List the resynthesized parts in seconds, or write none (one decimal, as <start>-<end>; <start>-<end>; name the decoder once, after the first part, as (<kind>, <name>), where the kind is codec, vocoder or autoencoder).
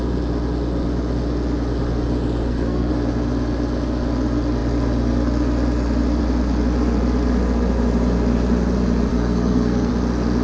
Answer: 2.4-2.9 (codec, SNAC); 9.1-9.9